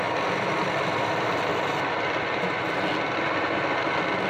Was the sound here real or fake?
real